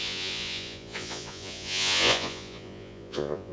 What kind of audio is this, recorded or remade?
remade